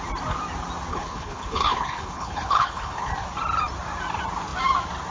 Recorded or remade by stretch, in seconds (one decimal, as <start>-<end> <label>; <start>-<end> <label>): 0.0-0.9 recorded; 0.9-3.1 remade; 3.1-5.1 recorded